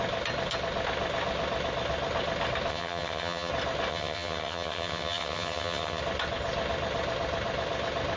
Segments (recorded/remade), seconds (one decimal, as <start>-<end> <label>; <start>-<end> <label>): 0.0-2.7 recorded; 2.7-3.5 remade; 3.5-3.9 recorded; 3.9-6.0 remade; 6.0-8.2 recorded